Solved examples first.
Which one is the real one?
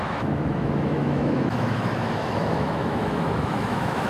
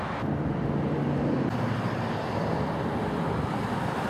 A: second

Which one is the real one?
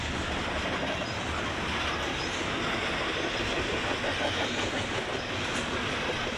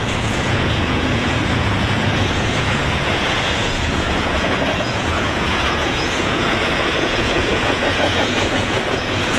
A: first